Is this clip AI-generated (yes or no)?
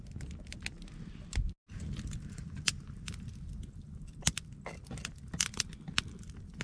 no